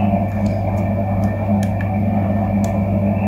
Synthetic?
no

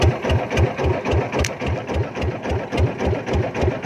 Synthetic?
no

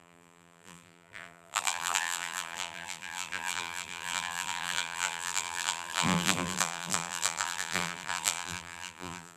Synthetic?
yes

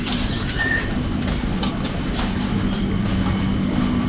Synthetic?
yes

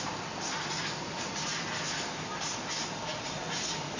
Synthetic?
no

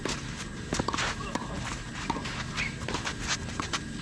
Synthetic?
yes